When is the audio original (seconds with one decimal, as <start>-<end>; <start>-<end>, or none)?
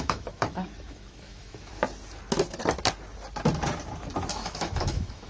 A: 1.7-4.3